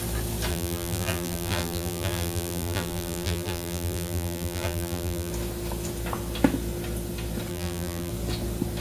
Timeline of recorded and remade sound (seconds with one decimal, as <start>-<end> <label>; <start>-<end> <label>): 0.0-0.5 recorded; 0.5-5.3 remade; 5.3-7.5 recorded; 7.5-8.1 remade; 8.1-8.8 recorded